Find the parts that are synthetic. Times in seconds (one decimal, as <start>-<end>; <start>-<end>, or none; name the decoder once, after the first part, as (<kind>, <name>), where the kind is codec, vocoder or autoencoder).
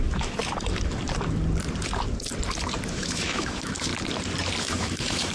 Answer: 0.0-0.4 (autoencoder, DAC-VAE); 2.9-3.9; 4.6-5.3